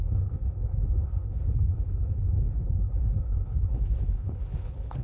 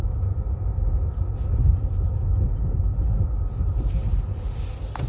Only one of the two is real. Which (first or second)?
second